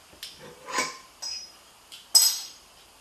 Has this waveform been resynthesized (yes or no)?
no